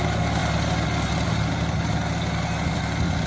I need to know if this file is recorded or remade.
recorded